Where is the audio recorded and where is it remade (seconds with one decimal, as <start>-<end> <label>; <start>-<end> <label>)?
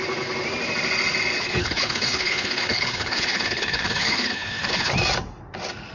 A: 0.0-1.4 recorded; 1.4-4.9 remade; 4.9-5.9 recorded